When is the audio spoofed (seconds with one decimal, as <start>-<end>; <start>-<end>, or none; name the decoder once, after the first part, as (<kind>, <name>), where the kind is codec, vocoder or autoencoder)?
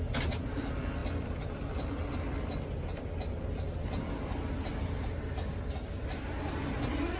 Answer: none